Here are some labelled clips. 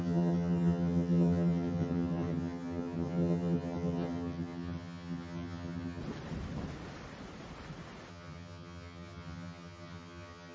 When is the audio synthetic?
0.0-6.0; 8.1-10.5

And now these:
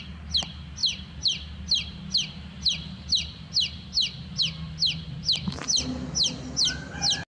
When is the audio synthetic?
none

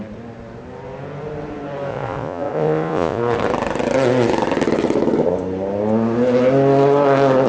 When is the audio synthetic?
1.9-3.2